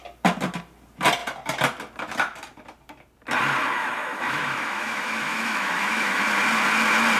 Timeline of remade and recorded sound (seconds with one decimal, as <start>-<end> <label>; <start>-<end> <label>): 0.0-3.8 recorded; 3.8-6.2 remade; 6.2-7.2 recorded